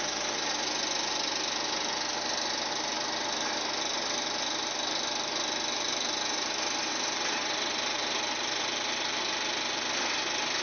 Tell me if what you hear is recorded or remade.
recorded